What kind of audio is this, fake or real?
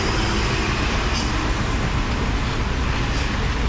real